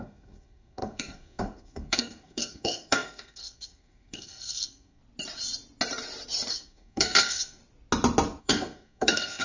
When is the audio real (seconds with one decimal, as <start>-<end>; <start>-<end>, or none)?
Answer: 5.0-6.5; 7.6-8.4